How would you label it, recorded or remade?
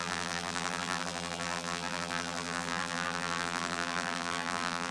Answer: remade